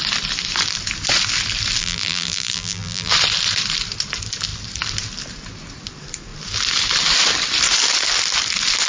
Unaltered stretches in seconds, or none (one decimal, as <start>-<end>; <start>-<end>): 0.0-1.8; 3.1-8.9